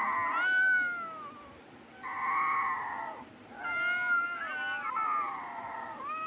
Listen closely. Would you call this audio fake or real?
real